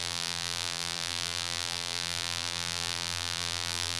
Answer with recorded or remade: remade